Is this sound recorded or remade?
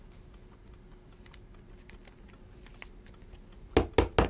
recorded